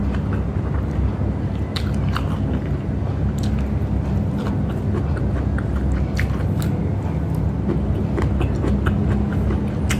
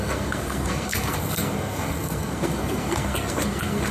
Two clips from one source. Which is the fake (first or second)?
second